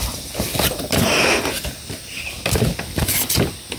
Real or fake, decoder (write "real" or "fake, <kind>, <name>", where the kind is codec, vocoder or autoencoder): real